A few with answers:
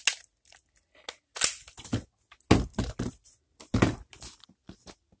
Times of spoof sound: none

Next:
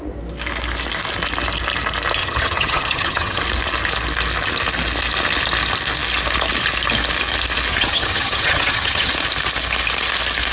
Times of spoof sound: 2.2-3.4 (vocoder, HiFi-GAN); 7.7-9.1

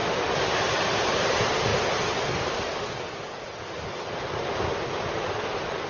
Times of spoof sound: 0.0-1.0 (vocoder, BigVGAN v2)

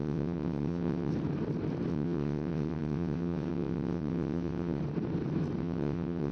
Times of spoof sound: 0.0-1.1 (vocoder, WaveNeXt); 1.9-4.8; 5.6-6.3

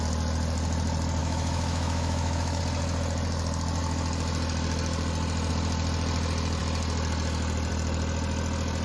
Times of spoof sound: 1.2-2.6 (autoencoder, DAC-VAE)

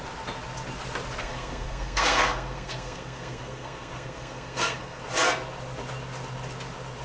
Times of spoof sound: 1.2-5.0 (codec, SNAC)

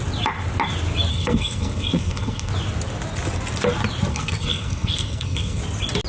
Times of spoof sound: 1.1-2.5 (codec, SNAC); 4.1-5.6